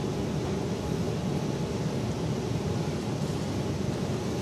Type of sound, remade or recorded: recorded